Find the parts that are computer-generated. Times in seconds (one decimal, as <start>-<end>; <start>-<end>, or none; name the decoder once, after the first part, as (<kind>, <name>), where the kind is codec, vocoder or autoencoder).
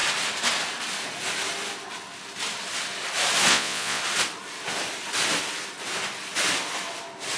3.5-4.0 (vocoder, Vocos)